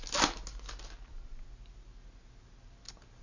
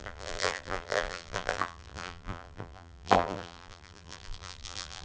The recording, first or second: first